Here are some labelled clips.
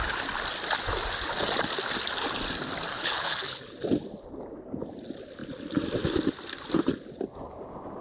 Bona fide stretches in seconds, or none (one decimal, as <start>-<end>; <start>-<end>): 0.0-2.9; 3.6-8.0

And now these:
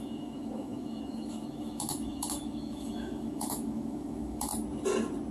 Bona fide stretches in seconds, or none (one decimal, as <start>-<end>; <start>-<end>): 4.5-5.3

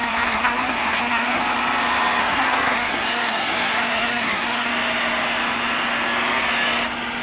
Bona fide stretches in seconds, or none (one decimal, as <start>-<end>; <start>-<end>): 1.4-2.2; 4.7-7.2

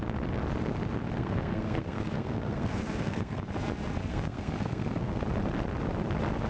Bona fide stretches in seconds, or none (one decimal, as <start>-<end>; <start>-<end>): 0.0-1.2; 3.4-4.1; 5.2-6.5

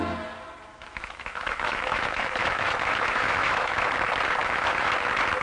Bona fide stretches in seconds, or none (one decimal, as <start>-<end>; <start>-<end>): 0.0-0.7; 3.9-4.4; 4.9-5.4